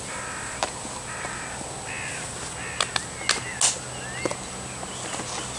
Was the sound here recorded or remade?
recorded